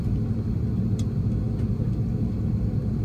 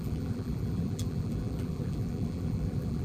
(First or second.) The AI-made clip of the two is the second